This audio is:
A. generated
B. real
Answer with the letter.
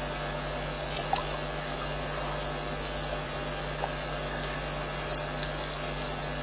B